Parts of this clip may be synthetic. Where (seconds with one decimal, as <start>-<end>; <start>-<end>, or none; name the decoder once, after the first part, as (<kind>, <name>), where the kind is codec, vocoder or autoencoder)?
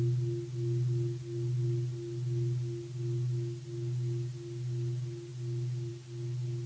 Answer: none